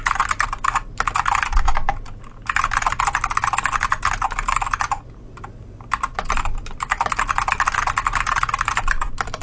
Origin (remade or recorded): recorded